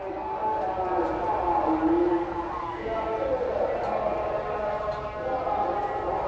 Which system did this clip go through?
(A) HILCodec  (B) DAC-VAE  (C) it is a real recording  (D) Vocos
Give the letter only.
C